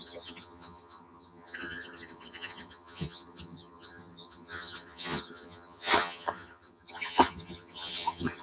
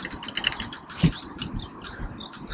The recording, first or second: second